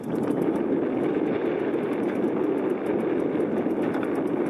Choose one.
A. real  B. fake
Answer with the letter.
A